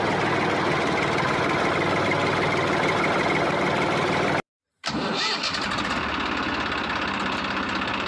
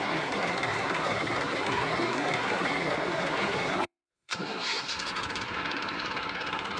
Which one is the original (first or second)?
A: first